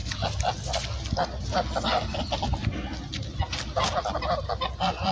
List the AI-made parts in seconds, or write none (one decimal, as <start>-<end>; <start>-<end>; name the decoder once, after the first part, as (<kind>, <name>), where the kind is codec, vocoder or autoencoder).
none